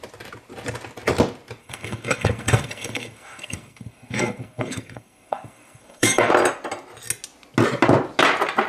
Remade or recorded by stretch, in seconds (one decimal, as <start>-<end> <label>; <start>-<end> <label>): 0.0-1.6 recorded; 1.6-6.3 remade; 6.3-8.7 recorded